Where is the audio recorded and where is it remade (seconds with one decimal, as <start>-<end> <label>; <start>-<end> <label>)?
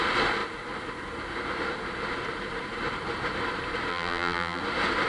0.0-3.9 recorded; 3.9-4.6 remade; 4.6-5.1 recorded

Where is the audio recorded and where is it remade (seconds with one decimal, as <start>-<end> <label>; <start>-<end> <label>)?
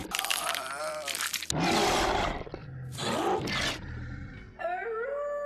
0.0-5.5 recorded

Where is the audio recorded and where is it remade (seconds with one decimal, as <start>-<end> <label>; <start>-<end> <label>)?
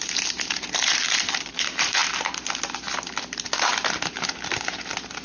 0.0-0.5 recorded; 0.5-2.0 remade; 2.0-5.2 recorded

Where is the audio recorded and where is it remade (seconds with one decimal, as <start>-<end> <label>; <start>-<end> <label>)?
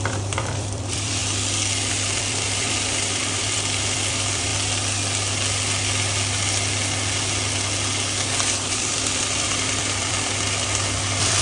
0.0-1.2 remade; 1.2-1.9 recorded; 1.9-4.5 remade; 4.5-8.7 recorded; 8.7-11.4 remade